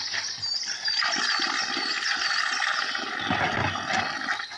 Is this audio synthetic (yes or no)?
no